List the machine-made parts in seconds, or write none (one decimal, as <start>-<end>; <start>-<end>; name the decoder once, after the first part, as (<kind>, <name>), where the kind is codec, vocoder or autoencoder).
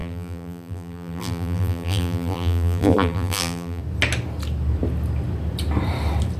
0.0-3.8 (vocoder, BigVGAN v2)